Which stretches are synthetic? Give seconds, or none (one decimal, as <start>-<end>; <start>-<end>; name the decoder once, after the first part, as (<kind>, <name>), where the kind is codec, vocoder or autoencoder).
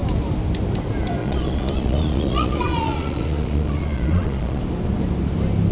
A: 1.2-4.6 (vocoder, Vocos)